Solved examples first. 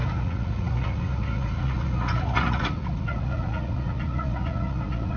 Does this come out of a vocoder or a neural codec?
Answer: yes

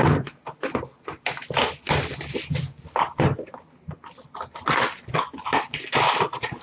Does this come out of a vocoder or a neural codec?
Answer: no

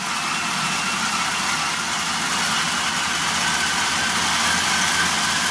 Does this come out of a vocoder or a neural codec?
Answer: no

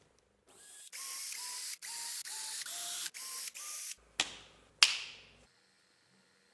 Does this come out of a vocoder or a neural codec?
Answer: no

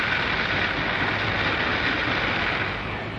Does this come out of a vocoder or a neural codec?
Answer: no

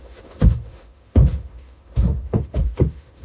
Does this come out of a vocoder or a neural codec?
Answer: yes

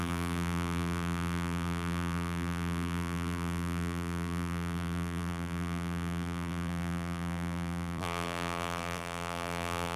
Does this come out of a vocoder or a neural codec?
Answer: yes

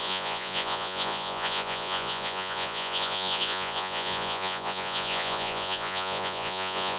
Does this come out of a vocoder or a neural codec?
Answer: yes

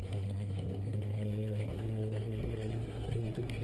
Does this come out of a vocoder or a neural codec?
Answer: yes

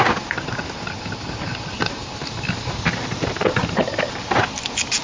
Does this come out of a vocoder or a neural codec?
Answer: no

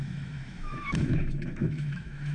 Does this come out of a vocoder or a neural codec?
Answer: yes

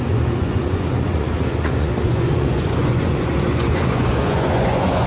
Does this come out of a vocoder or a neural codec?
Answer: yes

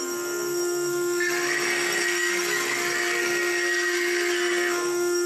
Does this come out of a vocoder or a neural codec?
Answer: yes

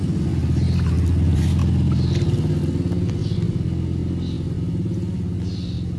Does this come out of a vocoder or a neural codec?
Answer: no